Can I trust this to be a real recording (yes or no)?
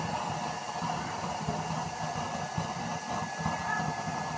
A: yes